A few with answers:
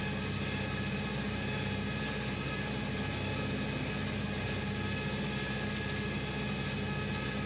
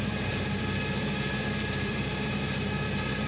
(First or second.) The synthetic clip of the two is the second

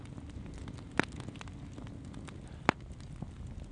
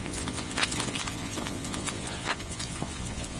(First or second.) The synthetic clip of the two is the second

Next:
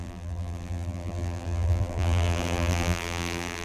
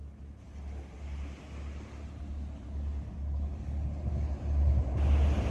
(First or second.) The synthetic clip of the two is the first